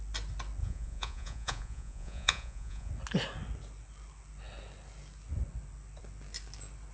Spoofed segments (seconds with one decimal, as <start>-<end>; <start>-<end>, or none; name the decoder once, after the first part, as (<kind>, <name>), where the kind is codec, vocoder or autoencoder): 0.6-2.9 (vocoder, Vocos)

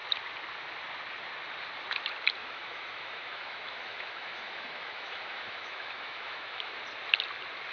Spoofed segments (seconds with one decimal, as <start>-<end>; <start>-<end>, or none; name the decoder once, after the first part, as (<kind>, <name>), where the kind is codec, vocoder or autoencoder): 2.4-6.8 (autoencoder, DAC-VAE)